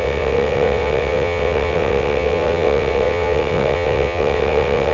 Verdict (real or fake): fake